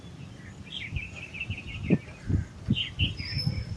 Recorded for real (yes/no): yes